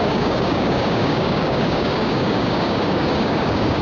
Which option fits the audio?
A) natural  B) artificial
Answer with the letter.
B